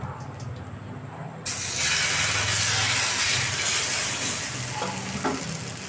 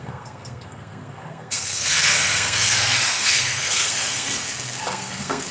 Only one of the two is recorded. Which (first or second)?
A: first